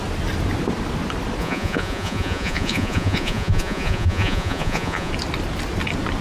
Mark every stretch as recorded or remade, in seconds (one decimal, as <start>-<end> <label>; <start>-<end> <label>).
0.0-1.4 recorded; 1.4-5.1 remade; 5.1-6.2 recorded